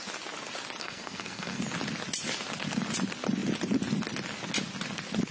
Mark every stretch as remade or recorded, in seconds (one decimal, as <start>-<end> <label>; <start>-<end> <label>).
0.0-0.8 recorded; 0.8-1.6 remade; 1.6-5.3 recorded